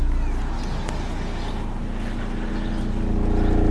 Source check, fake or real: real